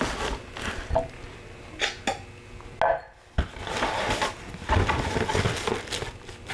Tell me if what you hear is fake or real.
real